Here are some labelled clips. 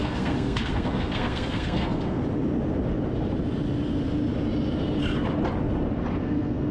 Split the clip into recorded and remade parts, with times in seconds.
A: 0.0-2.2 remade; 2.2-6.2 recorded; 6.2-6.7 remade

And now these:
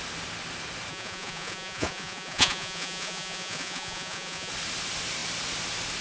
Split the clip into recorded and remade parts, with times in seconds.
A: 0.0-0.9 recorded; 0.9-4.5 remade; 4.5-6.0 recorded

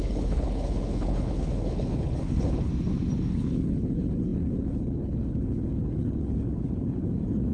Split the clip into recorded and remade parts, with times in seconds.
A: 0.0-2.7 remade; 2.7-3.3 recorded; 3.3-7.5 remade

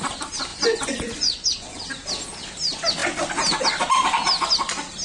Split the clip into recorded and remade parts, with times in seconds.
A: 0.0-0.5 recorded; 0.5-1.8 remade; 1.8-5.0 recorded

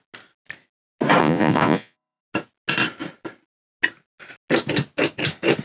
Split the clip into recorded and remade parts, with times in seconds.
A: 0.0-1.2 recorded; 1.2-2.2 remade; 2.2-5.6 recorded

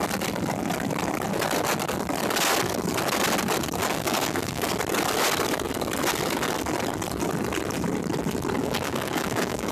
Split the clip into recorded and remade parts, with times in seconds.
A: 0.0-3.8 recorded; 3.8-4.7 remade; 4.7-8.6 recorded; 8.6-9.7 remade

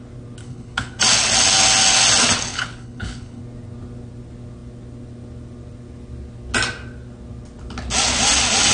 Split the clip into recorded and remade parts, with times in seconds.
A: 0.0-0.4 recorded; 0.4-1.0 remade; 1.0-2.5 recorded; 2.5-3.4 remade; 3.4-8.7 recorded

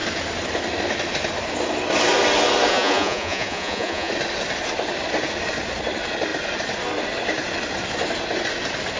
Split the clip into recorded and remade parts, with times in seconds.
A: 0.0-2.7 recorded; 2.7-4.1 remade; 4.1-9.0 recorded